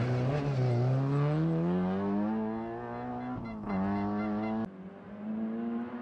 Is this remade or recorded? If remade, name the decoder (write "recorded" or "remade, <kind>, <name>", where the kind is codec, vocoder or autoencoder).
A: recorded